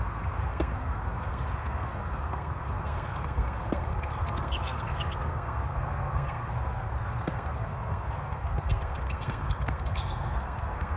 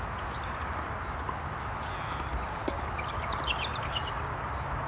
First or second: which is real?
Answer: second